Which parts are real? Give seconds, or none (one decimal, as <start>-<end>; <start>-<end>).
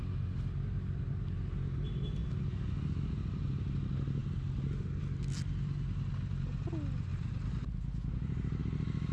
0.0-7.1; 8.6-9.1